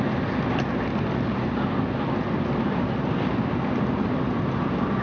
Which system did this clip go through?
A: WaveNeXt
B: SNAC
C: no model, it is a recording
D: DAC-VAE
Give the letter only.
C